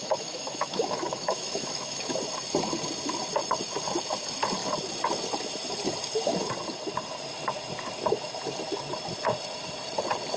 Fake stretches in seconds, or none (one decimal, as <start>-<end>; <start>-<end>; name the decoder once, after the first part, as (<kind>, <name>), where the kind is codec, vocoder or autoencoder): 0.0-2.2 (autoencoder, DAC-VAE)